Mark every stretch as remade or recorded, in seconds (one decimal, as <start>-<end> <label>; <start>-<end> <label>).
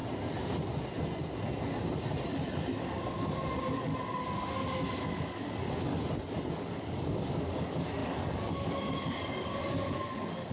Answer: 0.0-2.8 recorded; 2.8-3.9 remade; 3.9-5.1 recorded; 5.1-5.9 remade; 5.9-6.5 recorded; 6.5-10.5 remade